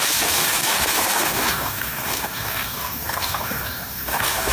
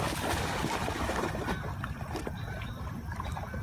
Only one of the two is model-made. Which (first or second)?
first